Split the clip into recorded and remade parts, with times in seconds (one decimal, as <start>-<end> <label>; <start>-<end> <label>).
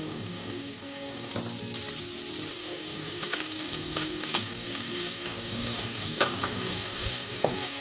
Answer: 0.0-1.3 remade; 1.3-2.5 recorded; 2.5-7.8 remade